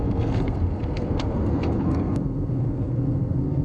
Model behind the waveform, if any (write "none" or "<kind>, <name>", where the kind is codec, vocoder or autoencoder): codec, SNAC